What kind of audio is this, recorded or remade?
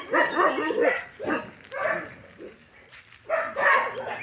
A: recorded